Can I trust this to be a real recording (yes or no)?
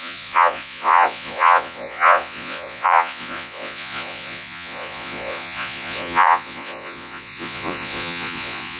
no